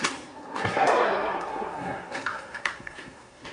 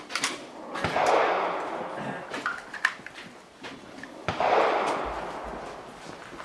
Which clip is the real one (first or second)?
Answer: second